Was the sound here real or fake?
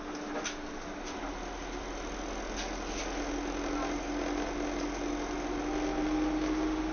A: real